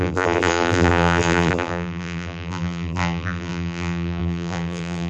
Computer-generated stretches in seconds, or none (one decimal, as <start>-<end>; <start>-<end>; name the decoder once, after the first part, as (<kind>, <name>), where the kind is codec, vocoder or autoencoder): 0.0-5.1 (vocoder, BigVGAN v2)